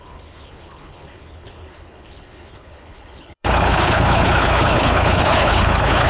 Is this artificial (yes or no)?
yes